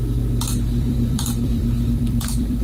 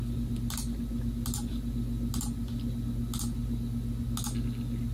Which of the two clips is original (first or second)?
second